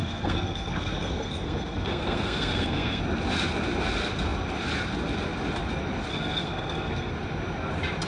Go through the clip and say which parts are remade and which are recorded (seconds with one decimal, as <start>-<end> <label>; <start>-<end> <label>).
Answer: 0.0-3.0 remade; 3.0-6.1 recorded; 6.1-7.1 remade; 7.1-8.1 recorded